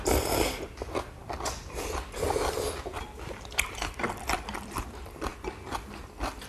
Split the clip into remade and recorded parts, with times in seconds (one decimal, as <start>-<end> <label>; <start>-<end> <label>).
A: 0.0-6.5 recorded